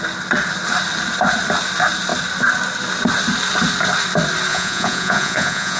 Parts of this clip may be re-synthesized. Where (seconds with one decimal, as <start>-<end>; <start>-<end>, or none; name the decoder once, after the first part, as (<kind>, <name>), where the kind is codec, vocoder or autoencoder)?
4.5-5.8 (vocoder, Vocos)